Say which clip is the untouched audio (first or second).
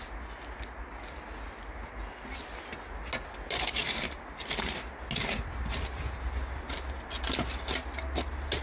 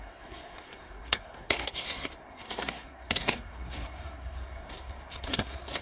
first